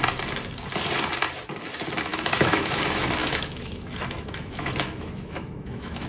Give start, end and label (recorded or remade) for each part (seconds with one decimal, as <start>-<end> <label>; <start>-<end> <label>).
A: 0.0-2.1 recorded; 2.1-2.8 remade; 2.8-3.2 recorded; 3.2-6.1 remade